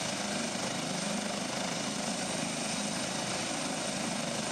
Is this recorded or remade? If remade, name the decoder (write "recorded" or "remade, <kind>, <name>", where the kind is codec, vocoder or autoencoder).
recorded